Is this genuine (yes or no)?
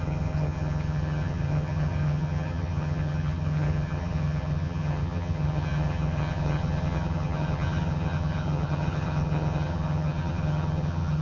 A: no